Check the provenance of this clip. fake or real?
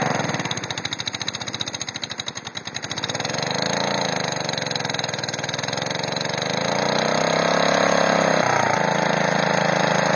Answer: real